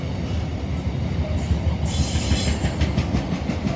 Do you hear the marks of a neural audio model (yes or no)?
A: no